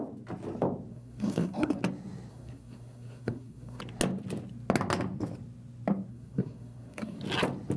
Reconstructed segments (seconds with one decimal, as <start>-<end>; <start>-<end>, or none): 0.9-1.8; 2.3-3.8; 6.1-7.2